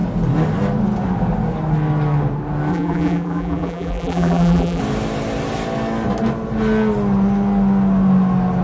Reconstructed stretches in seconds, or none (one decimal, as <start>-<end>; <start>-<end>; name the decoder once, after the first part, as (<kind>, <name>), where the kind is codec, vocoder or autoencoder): 2.7-4.8 (vocoder, BigVGAN v2)

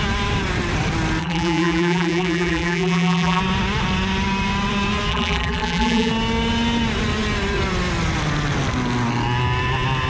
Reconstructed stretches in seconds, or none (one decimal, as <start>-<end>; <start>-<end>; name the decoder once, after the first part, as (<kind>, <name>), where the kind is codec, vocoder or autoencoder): 1.2-3.4 (vocoder, BigVGAN v2); 5.1-6.1